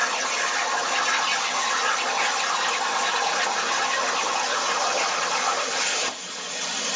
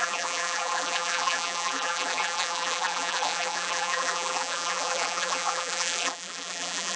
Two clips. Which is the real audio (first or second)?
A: first